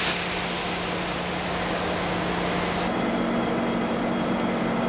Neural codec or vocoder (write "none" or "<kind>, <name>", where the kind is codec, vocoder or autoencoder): none